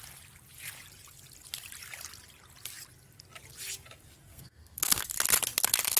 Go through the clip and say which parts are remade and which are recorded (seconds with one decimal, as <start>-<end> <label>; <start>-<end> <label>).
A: 0.0-4.3 recorded; 4.3-5.0 remade; 5.0-6.0 recorded